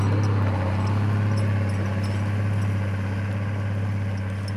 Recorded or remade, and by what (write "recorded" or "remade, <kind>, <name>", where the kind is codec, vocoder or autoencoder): recorded